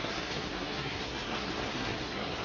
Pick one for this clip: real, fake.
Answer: fake